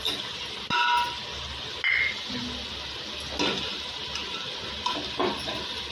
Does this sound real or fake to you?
real